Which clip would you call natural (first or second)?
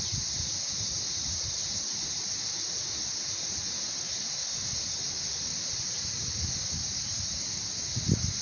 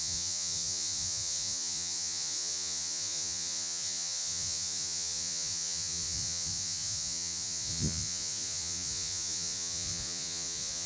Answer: first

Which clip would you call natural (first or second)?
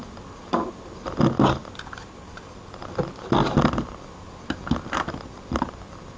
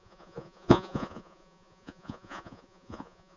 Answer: first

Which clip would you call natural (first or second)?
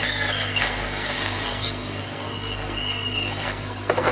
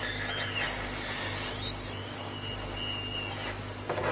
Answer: second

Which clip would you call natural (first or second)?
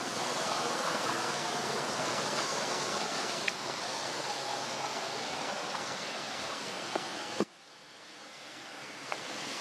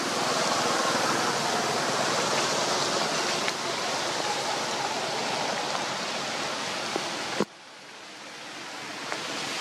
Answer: second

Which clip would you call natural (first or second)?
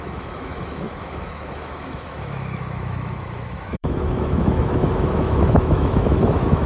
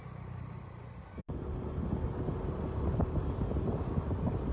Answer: second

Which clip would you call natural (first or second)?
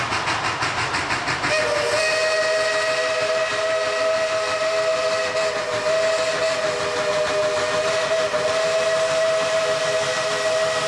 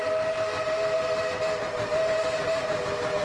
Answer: first